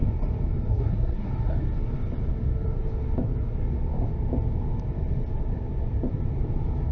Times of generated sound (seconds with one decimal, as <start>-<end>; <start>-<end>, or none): 0.7-1.3